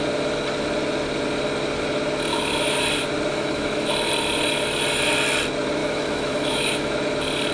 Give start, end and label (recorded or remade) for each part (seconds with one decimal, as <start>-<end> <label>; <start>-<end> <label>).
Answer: 0.0-2.3 recorded; 2.3-2.8 remade; 2.8-3.3 recorded; 3.3-3.9 remade; 3.9-5.8 recorded; 5.8-6.9 remade; 6.9-7.5 recorded